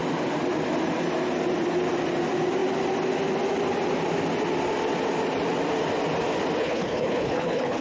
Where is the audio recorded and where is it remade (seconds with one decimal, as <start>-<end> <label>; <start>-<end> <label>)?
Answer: 0.0-6.6 recorded; 6.6-7.8 remade